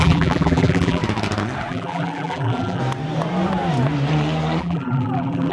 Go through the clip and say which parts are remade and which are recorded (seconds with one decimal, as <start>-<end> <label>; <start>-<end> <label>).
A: 0.0-1.0 remade; 1.0-1.7 recorded; 1.7-2.8 remade; 2.8-4.6 recorded; 4.6-5.5 remade